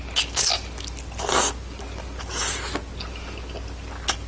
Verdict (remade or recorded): recorded